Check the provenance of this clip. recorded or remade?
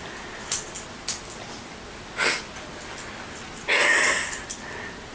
recorded